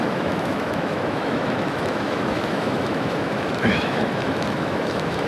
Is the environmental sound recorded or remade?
remade